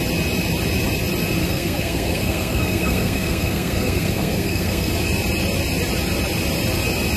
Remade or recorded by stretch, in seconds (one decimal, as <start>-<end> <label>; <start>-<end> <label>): 0.0-1.4 recorded; 1.4-4.9 remade; 4.9-7.2 recorded